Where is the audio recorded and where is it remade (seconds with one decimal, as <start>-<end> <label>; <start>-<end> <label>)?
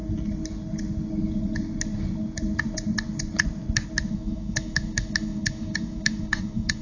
0.0-4.1 recorded; 4.1-6.8 remade